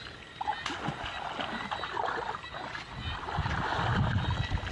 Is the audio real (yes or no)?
yes